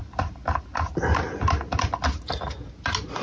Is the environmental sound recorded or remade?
recorded